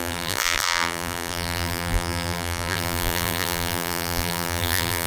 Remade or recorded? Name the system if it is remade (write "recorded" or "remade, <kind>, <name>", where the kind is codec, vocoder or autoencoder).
remade, vocoder, BigVGAN v2